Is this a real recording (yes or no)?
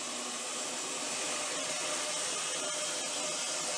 yes